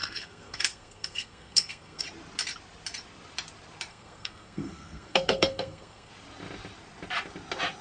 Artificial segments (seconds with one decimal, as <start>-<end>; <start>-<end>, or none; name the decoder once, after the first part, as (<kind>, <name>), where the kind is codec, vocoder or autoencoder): 0.0-2.0 (codec, SNAC); 3.9-6.1